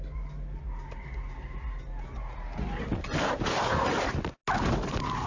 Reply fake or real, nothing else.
real